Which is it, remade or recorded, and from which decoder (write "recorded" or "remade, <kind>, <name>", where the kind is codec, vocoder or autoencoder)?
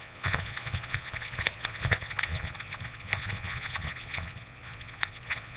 remade, vocoder, Vocos